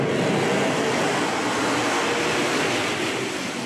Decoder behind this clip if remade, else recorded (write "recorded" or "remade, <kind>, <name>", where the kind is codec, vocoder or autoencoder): recorded